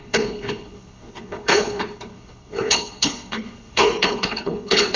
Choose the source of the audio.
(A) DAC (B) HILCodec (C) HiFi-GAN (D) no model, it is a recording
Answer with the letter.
B